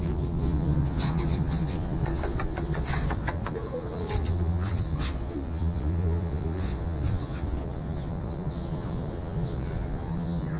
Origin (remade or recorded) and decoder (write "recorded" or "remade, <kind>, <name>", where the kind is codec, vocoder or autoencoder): remade, vocoder, Vocos